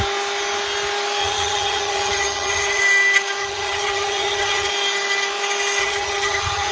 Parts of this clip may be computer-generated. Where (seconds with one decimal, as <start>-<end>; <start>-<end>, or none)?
1.2-2.8; 3.4-4.7; 5.8-6.7